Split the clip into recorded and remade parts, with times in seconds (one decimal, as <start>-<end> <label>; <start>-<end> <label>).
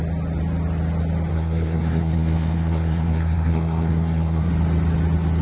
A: 0.0-1.3 recorded; 1.3-4.5 remade; 4.5-5.4 recorded